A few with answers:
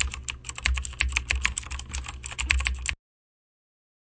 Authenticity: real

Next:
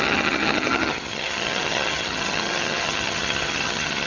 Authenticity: fake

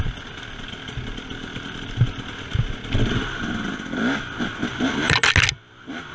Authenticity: real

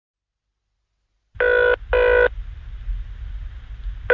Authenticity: real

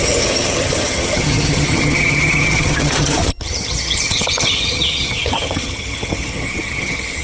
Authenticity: fake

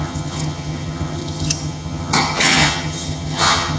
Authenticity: fake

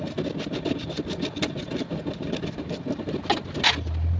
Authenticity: real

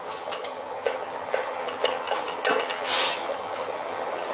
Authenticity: fake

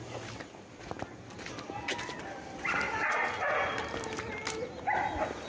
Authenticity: real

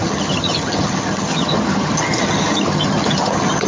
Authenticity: fake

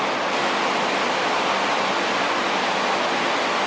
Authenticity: real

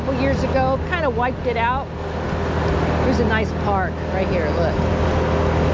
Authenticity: real